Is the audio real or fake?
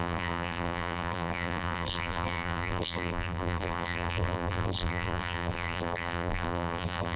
fake